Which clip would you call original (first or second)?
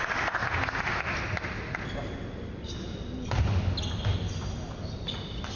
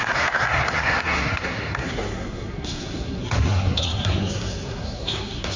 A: first